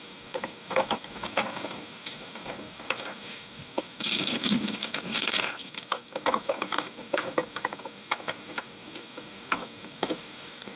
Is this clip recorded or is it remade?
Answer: remade